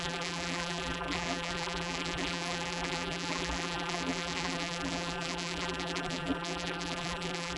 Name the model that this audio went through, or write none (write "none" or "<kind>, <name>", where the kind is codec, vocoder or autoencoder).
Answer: vocoder, BigVGAN v2